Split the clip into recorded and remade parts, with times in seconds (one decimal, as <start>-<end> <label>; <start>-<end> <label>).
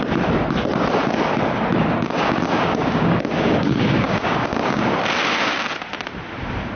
0.0-1.7 recorded; 1.7-5.0 remade; 5.0-6.8 recorded